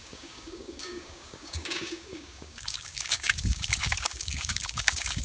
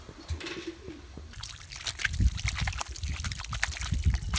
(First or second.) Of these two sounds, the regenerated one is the first